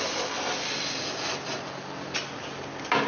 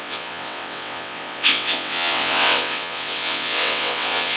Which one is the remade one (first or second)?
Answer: second